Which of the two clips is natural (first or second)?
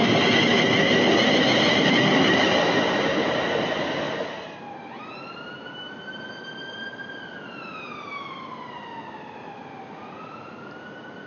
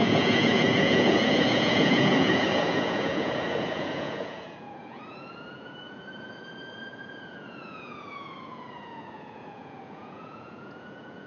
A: first